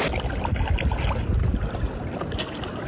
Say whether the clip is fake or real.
real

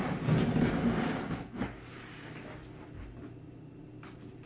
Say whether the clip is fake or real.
real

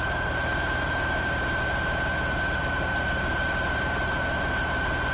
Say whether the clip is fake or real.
real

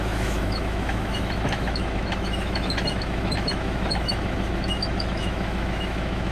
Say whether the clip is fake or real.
fake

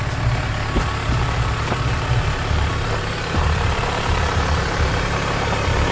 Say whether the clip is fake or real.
fake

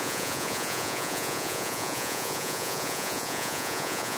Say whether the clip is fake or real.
fake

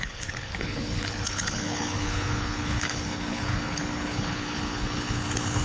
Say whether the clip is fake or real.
fake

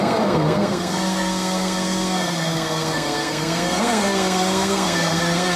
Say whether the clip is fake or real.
fake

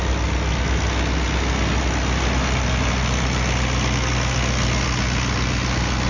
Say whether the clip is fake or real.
real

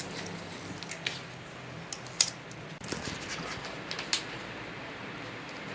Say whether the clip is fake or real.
real